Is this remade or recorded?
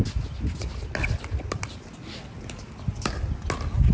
recorded